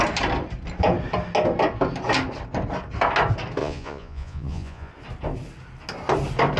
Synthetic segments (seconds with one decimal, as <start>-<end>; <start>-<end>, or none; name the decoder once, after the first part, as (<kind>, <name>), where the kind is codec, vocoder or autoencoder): 3.6-4.9 (vocoder, Vocos)